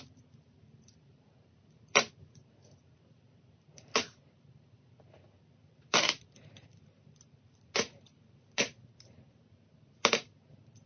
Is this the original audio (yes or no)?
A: no